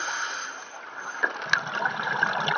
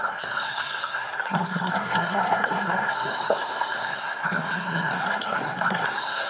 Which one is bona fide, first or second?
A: first